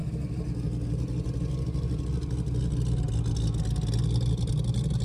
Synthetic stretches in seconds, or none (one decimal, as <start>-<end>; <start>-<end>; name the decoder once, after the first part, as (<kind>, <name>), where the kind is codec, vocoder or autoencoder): none